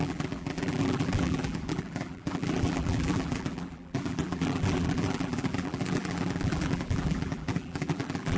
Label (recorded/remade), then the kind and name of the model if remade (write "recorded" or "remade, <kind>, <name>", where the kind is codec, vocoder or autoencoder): remade, vocoder, BigVGAN v2